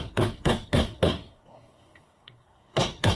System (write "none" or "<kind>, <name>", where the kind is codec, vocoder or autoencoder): codec, SNAC